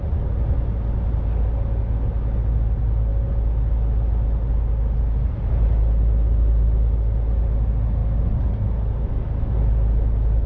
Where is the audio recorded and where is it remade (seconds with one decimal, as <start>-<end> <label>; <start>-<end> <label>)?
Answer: 0.0-10.5 recorded